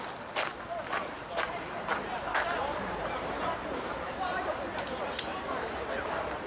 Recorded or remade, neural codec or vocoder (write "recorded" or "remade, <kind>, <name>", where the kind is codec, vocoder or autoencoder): remade, vocoder, BigVGAN v2